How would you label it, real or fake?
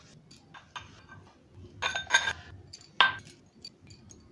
real